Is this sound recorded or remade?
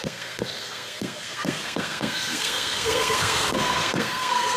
remade